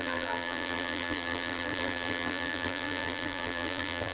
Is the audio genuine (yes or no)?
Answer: no